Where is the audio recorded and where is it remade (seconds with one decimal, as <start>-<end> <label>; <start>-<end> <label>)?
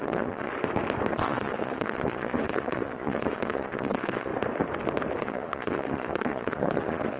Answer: 0.0-0.5 remade; 0.5-1.1 recorded; 1.1-4.3 remade; 4.3-5.2 recorded; 5.2-7.2 remade